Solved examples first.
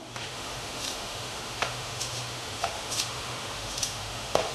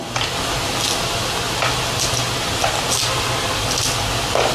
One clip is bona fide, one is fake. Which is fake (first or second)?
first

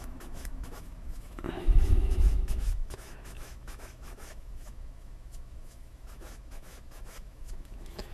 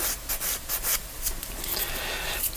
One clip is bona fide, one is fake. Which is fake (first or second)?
first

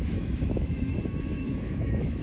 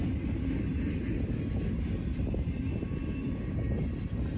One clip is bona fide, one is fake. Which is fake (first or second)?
first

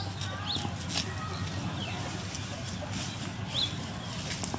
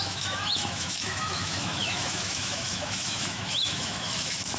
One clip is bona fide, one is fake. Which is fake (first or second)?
second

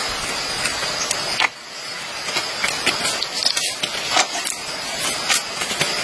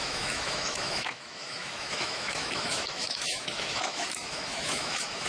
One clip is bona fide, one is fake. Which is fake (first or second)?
second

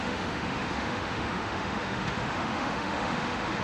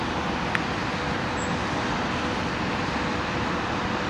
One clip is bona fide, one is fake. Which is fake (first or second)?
first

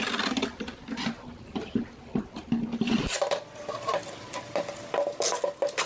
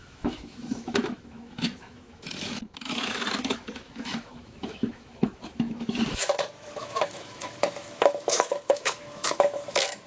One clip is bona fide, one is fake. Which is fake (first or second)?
second